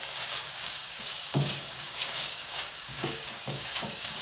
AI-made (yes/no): yes